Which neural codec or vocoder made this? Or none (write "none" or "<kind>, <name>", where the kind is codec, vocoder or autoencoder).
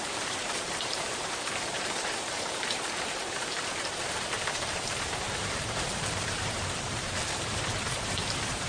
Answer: vocoder, BigVGAN v2